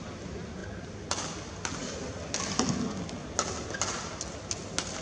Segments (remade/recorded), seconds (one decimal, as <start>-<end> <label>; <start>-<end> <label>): 0.0-5.0 recorded